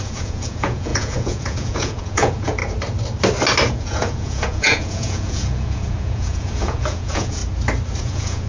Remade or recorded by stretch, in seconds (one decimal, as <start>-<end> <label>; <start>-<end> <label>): 0.0-2.6 remade; 2.6-3.7 recorded; 3.7-7.4 remade; 7.4-8.0 recorded; 8.0-8.5 remade